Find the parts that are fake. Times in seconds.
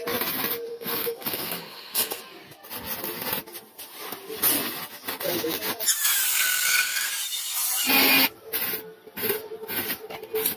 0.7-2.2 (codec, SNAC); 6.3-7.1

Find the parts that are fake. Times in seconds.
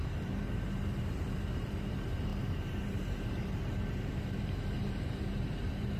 0.0-6.0 (vocoder, BigVGAN v2)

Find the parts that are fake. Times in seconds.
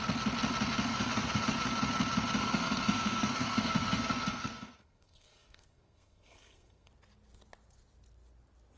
0.9-1.4 (codec, SNAC); 2.4-6.9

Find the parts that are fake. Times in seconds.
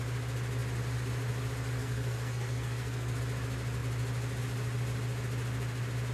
1.8-3.2 (codec, SNAC)